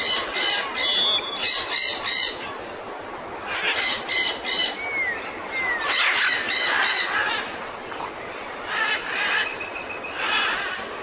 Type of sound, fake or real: real